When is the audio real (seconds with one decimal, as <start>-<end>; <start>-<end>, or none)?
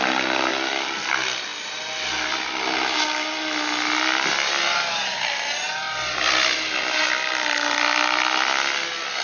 0.0-9.2